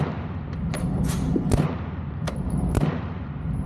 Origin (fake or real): fake